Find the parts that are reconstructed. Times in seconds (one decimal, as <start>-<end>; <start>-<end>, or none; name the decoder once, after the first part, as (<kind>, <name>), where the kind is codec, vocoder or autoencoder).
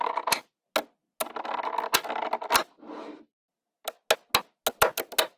none